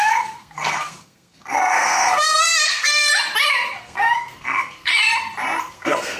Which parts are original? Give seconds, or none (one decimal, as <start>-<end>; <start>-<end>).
3.1-3.8; 4.9-5.6